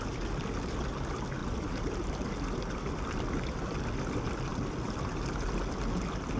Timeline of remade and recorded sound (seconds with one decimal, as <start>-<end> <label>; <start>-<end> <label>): 0.0-1.4 recorded; 1.4-3.8 remade; 3.8-4.5 recorded; 4.5-5.1 remade; 5.1-6.4 recorded